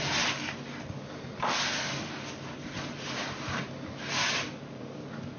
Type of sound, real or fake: real